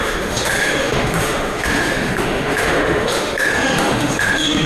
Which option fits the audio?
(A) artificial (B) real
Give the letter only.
A